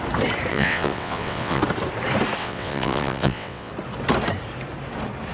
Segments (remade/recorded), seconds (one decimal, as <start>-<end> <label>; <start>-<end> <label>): 0.0-0.5 recorded; 0.5-1.6 remade; 1.6-2.4 recorded; 2.4-3.7 remade; 3.7-5.3 recorded

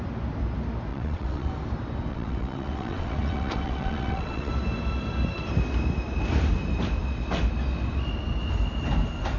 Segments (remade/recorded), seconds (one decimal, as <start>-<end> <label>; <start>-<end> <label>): 0.0-0.9 recorded; 0.9-1.5 remade; 1.5-2.1 recorded; 2.1-4.5 remade; 4.5-9.4 recorded

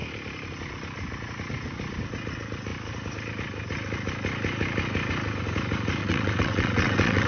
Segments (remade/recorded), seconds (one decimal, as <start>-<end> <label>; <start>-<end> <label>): 0.0-6.0 recorded; 6.0-7.3 remade

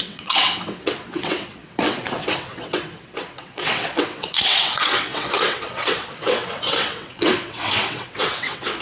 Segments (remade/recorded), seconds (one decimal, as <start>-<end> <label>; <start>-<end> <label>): 0.0-8.8 remade

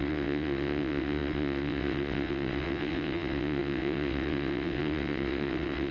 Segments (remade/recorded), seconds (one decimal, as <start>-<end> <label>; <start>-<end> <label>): 0.0-5.9 remade

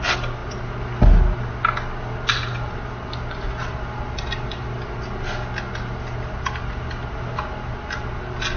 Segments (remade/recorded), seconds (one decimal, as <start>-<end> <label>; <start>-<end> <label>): 0.0-8.6 recorded